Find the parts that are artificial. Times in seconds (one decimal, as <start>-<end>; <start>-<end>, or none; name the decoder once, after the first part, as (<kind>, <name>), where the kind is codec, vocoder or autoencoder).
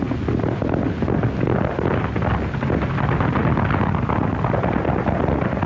none